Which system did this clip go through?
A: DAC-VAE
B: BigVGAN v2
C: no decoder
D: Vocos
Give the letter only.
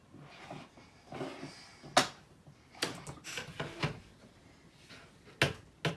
C